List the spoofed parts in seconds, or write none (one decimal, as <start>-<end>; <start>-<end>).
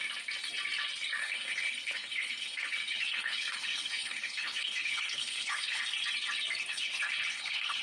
1.2-5.8; 6.7-7.8